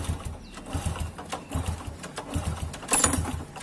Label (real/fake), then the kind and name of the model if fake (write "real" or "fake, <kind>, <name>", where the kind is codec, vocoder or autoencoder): real